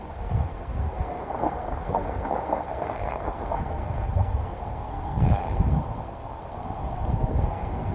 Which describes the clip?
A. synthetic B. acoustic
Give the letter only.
A